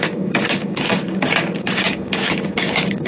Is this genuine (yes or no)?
no